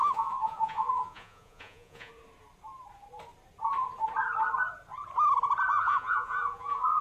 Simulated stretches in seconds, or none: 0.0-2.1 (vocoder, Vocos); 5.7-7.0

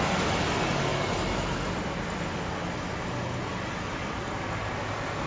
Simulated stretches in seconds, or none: none

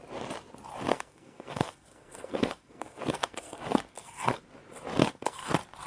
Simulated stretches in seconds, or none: 0.9-4.4 (codec, SNAC); 5.0-5.5

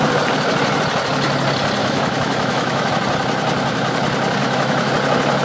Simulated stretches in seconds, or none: 1.8-2.9 (autoencoder, DAC-VAE); 4.4-4.9

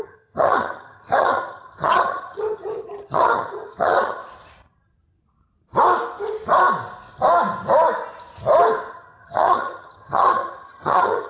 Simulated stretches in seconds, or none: 0.0-4.2 (vocoder, HiFi-GAN); 8.9-11.3

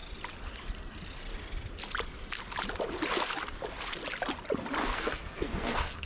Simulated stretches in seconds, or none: 4.8-6.1 (codec, SNAC)

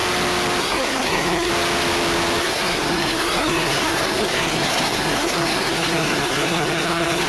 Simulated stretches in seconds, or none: 0.6-1.5 (codec, SNAC); 2.4-7.3

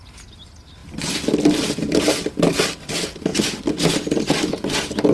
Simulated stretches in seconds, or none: 0.8-2.9 (vocoder, BigVGAN v2)